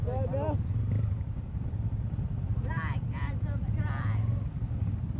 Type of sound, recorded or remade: remade